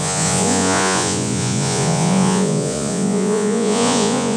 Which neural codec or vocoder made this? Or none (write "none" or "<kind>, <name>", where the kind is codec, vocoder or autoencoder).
vocoder, Vocos